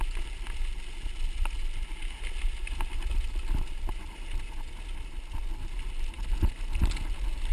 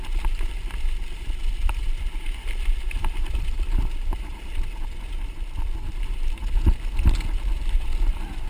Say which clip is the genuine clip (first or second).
first